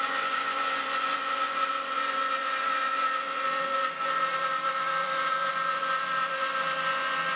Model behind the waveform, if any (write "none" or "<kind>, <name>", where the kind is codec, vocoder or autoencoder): vocoder, Vocos